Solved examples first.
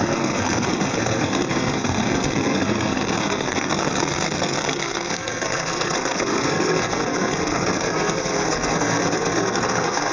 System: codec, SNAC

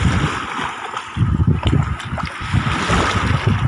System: none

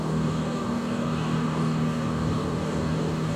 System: codec, DAC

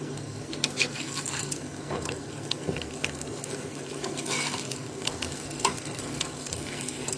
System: codec, SNAC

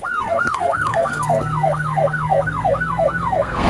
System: codec, SNAC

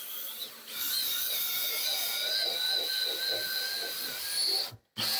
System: none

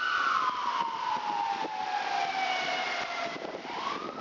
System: none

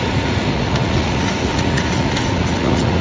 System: vocoder, Vocos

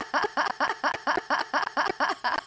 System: none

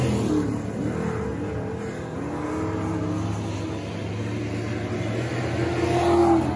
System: none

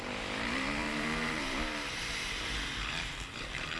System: vocoder, BigVGAN v2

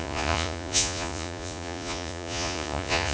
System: vocoder, Vocos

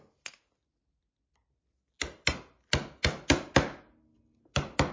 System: none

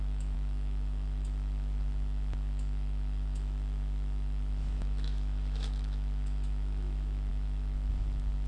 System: autoencoder, DAC-VAE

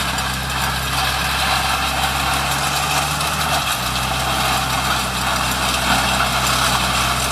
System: none